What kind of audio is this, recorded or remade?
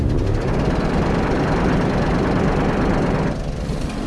recorded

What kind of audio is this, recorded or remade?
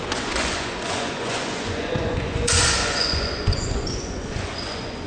remade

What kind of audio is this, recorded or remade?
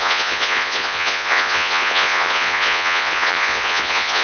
remade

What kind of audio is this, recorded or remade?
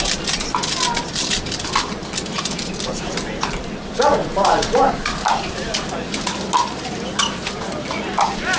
recorded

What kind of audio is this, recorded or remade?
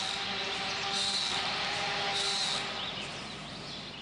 recorded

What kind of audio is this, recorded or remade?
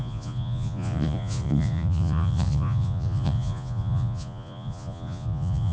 remade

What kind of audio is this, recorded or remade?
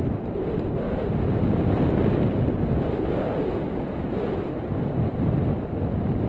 recorded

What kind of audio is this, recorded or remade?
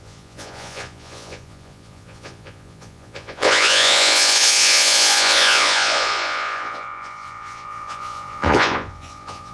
remade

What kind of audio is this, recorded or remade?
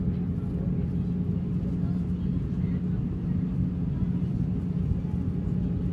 recorded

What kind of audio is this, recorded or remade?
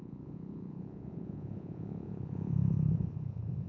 remade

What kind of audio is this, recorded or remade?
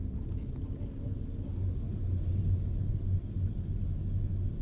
recorded